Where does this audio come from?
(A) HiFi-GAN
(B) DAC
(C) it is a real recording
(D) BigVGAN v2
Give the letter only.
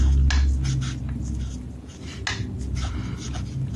C